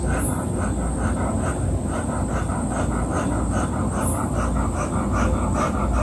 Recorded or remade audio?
recorded